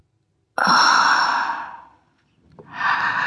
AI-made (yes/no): no